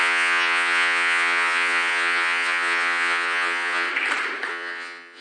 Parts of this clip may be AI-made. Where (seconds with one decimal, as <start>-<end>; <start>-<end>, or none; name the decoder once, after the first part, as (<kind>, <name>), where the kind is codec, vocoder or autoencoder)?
0.0-3.9 (vocoder, WaveNeXt); 4.5-5.2